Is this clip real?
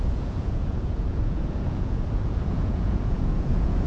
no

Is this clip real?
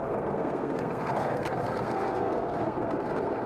no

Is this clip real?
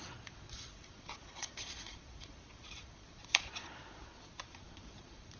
no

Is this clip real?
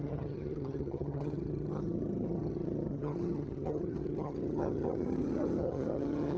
no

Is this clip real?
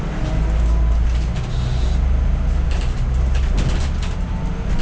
yes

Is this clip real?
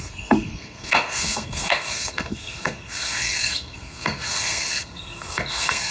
no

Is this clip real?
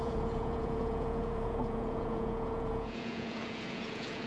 no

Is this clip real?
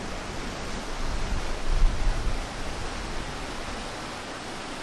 yes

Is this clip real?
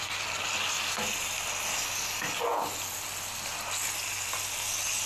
yes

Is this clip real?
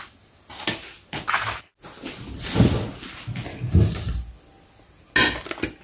yes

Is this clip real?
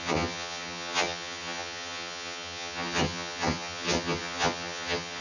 no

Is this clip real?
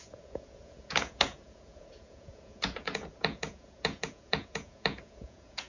no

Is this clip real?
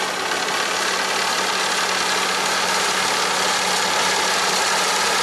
yes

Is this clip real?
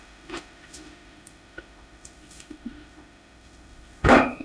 no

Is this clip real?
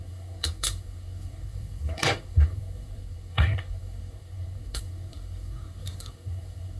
no